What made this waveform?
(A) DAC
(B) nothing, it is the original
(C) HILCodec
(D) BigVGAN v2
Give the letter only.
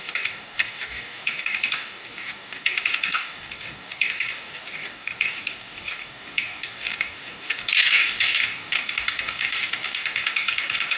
A